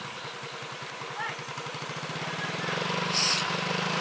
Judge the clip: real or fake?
real